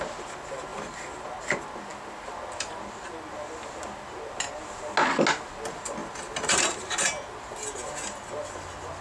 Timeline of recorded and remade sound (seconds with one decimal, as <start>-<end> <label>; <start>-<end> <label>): 0.0-9.0 recorded